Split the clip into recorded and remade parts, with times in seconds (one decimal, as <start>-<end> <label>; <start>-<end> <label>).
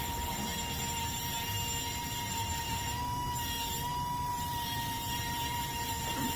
0.0-0.5 remade; 0.5-4.3 recorded; 4.3-6.4 remade